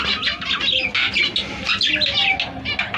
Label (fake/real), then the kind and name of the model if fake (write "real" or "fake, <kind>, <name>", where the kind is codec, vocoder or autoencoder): real